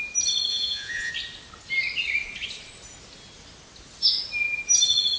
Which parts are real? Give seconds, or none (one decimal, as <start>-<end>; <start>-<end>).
0.0-0.5; 1.1-5.2